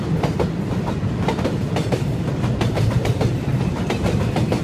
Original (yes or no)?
no